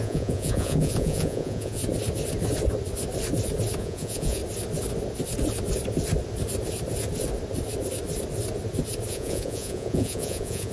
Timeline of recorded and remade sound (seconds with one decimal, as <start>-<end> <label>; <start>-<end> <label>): 0.0-1.8 remade; 1.8-3.8 recorded; 3.8-4.4 remade; 4.4-9.1 recorded; 9.1-10.7 remade